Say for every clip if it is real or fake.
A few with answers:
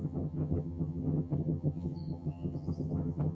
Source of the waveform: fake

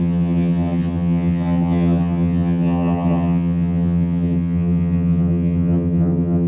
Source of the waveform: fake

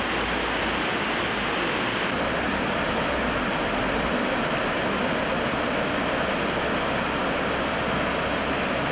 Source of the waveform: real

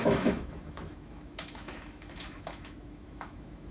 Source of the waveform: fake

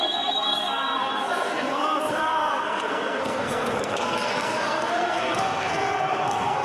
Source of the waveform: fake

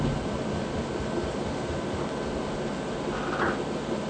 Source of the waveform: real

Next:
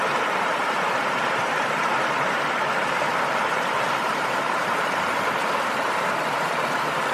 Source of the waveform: fake